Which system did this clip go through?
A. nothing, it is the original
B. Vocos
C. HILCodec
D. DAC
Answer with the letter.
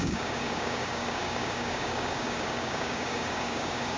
D